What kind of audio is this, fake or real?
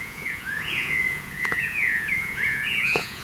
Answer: fake